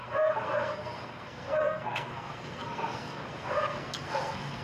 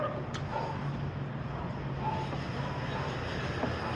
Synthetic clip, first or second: first